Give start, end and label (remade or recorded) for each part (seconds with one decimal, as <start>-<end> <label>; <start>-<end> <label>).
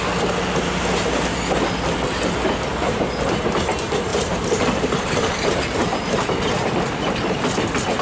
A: 0.0-4.1 recorded; 4.1-7.4 remade; 7.4-8.0 recorded